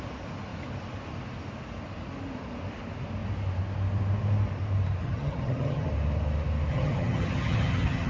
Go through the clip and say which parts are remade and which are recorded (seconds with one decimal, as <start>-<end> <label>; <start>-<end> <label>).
0.0-5.0 recorded; 5.0-5.9 remade; 5.9-6.7 recorded; 6.7-8.1 remade